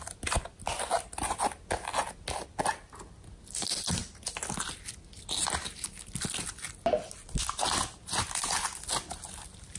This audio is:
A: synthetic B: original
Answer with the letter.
B